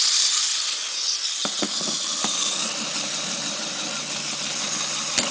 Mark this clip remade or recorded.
recorded